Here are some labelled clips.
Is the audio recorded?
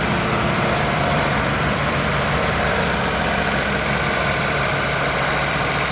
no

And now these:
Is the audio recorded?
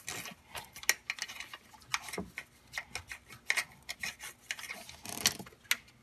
yes